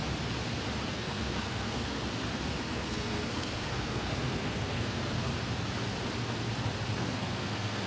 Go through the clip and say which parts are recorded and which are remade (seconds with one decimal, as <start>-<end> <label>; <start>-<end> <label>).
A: 0.0-0.9 recorded; 0.9-2.0 remade; 2.0-2.6 recorded; 2.6-5.3 remade; 5.3-7.0 recorded; 7.0-7.9 remade